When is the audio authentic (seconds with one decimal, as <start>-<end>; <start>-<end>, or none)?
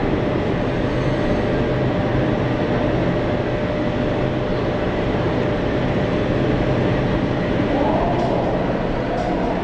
0.7-2.1; 2.6-4.5; 8.6-9.6